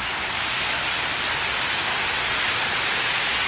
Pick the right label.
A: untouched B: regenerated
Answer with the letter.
A